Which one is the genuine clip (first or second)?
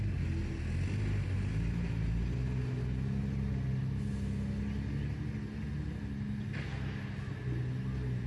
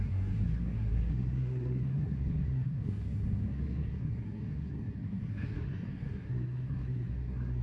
first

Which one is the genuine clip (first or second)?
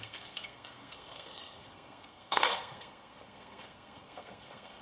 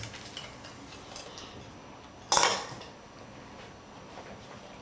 second